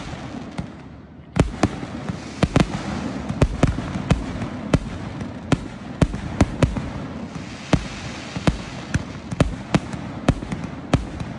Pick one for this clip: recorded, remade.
recorded